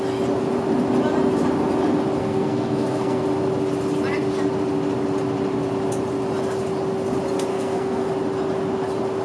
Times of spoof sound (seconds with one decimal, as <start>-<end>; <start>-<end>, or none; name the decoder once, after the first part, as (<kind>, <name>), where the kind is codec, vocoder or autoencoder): 2.2-3.2 (codec, SNAC); 7.5-8.1